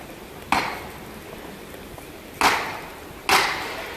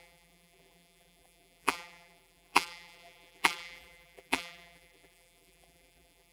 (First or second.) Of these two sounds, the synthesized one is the second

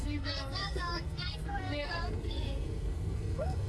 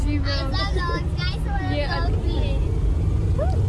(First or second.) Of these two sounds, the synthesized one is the first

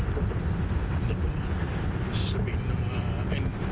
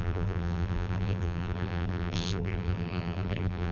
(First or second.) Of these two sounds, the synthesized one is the second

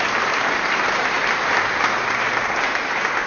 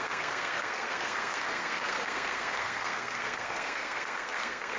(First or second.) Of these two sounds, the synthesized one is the second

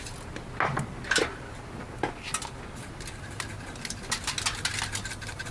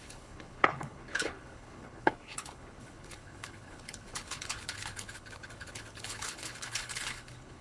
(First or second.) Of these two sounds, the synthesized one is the second